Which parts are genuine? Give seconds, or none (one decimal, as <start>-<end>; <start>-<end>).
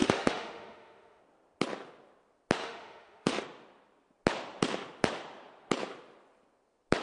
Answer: 1.2-2.6; 3.4-7.0